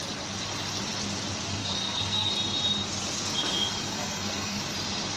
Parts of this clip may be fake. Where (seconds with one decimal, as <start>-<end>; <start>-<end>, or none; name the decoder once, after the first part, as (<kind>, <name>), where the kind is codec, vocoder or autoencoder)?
1.6-2.3 (codec, SNAC); 3.4-4.6